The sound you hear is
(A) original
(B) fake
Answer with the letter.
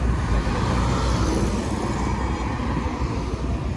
A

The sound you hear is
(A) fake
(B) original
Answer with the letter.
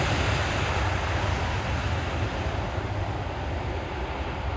B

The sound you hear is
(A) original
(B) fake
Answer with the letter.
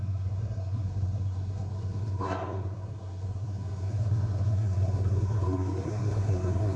B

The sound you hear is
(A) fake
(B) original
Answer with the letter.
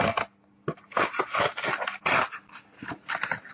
B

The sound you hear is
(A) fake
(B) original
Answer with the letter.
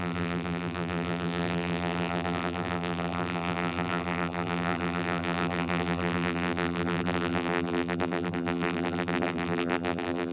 A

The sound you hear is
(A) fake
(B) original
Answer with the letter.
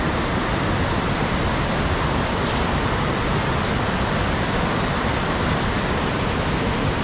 B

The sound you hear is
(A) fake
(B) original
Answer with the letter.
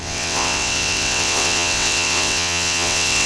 A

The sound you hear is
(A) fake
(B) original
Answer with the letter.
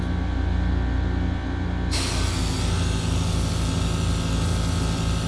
B